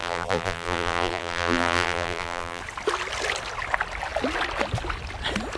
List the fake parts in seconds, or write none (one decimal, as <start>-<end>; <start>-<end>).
0.0-2.6